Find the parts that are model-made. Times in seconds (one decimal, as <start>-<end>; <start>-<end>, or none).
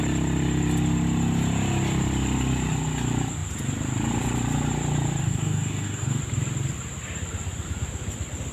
5.2-6.2